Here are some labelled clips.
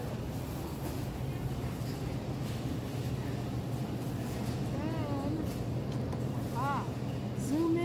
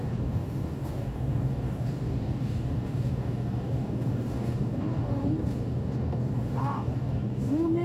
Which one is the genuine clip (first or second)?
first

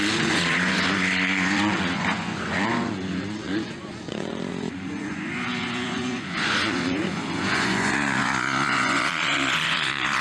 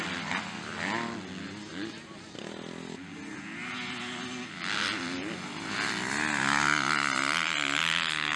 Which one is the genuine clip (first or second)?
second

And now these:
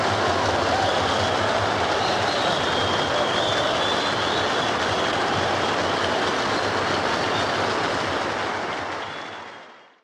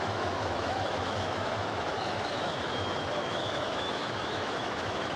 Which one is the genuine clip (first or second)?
first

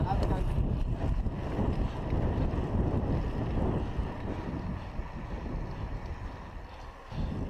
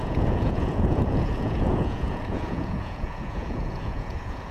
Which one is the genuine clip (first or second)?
first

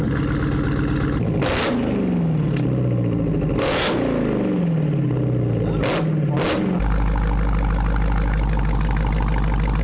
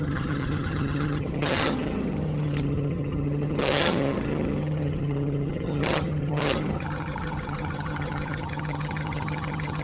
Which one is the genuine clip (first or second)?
first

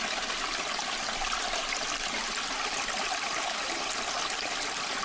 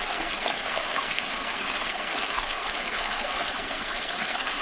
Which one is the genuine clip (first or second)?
first